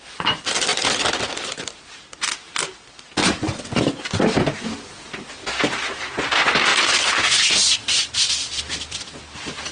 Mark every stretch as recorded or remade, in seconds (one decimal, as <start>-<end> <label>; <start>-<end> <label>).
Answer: 0.0-2.5 remade; 2.5-4.4 recorded; 4.4-6.7 remade; 6.7-8.0 recorded; 8.0-9.7 remade